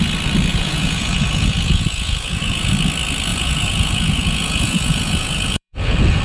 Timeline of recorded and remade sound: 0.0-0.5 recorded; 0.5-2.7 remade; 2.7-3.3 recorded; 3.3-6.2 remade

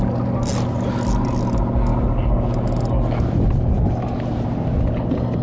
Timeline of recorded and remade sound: 0.0-5.4 recorded